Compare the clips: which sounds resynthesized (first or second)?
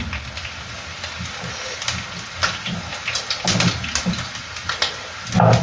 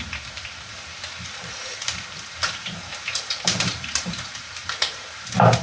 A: second